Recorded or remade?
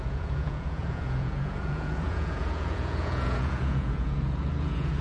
remade